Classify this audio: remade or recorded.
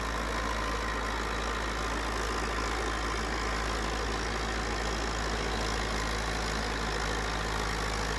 recorded